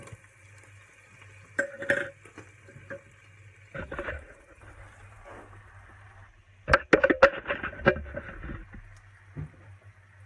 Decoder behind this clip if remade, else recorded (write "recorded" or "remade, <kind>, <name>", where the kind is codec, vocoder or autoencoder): recorded